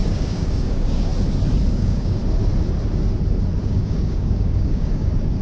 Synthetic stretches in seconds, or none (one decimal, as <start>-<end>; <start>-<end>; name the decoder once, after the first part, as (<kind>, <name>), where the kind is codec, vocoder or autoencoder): 0.0-1.1 (codec, DAC); 1.7-2.2; 3.6-5.4